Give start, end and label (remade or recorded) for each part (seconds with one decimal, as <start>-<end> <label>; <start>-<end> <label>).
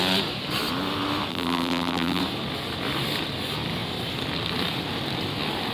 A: 0.0-1.3 recorded; 1.3-2.2 remade; 2.2-5.7 recorded